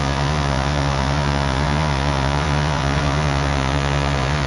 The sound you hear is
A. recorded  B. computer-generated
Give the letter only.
B